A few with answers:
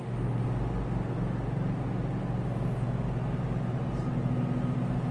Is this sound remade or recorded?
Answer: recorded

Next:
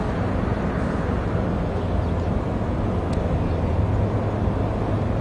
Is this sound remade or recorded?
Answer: recorded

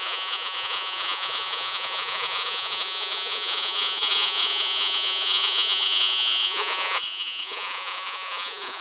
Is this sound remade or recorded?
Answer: remade